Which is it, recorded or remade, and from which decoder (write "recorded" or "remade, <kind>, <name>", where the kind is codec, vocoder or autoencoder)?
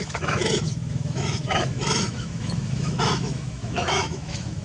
remade, autoencoder, DAC-VAE